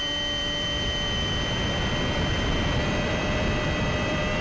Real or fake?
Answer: fake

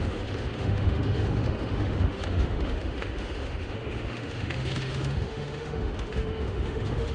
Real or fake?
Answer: fake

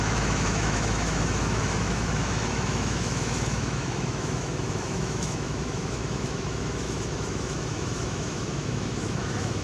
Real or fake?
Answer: fake